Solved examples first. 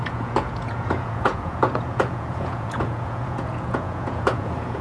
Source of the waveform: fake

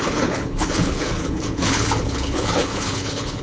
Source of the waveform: fake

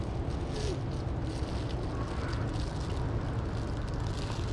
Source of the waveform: real